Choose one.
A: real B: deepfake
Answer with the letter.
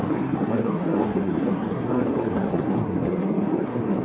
B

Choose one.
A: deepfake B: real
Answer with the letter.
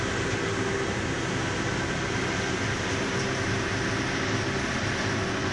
B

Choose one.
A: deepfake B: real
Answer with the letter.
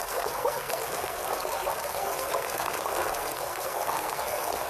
A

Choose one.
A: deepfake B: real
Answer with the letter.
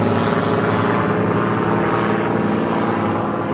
B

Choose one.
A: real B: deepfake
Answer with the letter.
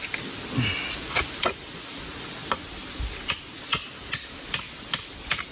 A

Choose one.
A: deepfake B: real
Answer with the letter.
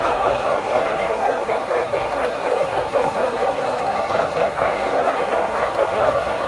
A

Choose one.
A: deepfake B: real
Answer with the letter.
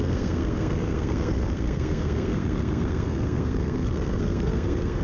A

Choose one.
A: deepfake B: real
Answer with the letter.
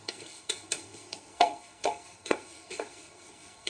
A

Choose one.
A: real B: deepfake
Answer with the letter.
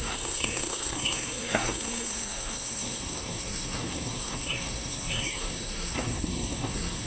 B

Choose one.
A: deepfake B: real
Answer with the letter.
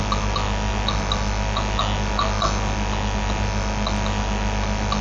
B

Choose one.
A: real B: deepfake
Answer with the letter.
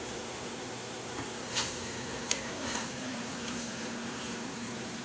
B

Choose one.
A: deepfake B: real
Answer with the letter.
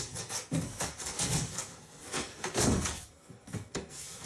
A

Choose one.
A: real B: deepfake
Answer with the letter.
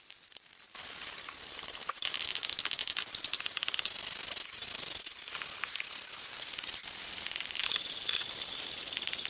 A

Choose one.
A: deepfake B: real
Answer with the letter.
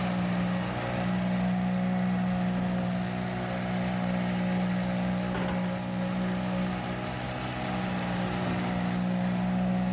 B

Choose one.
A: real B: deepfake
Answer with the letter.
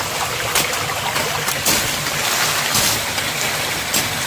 A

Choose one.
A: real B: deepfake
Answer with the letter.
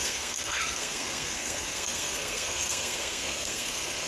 B